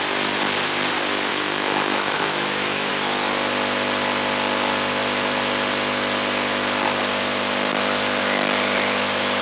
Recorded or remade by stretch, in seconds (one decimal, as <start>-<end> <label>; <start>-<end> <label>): 0.0-1.3 recorded; 1.3-2.9 remade; 2.9-9.4 recorded